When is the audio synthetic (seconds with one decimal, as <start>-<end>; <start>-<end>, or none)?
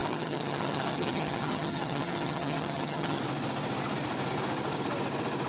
0.0-3.2